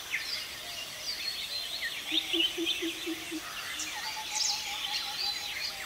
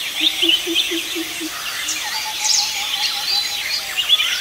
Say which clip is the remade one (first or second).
second